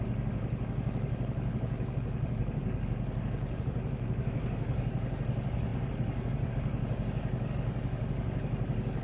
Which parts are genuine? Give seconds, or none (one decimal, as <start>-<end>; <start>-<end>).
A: none